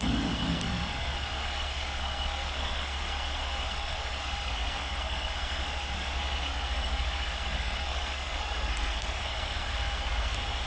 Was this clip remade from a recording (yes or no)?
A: yes